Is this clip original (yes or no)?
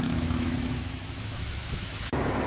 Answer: no